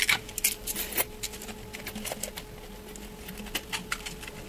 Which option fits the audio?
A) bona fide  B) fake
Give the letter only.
A